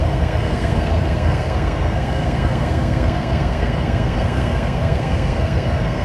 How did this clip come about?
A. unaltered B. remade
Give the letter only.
B